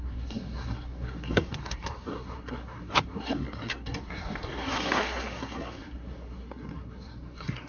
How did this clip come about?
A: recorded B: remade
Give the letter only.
B